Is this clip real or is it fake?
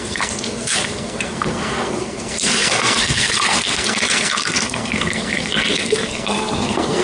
fake